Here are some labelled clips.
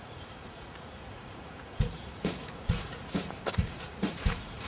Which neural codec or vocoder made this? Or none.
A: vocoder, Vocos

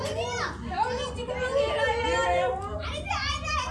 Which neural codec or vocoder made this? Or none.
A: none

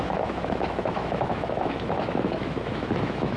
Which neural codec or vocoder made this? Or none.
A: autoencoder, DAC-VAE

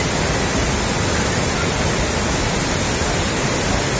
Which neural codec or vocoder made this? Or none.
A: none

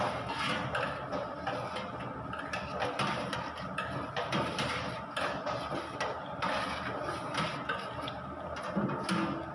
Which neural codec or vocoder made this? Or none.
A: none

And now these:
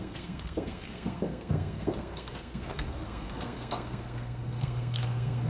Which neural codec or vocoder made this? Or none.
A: codec, SNAC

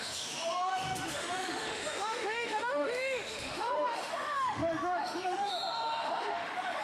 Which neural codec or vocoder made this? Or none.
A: autoencoder, DAC-VAE